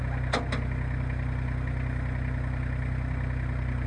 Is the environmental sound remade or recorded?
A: recorded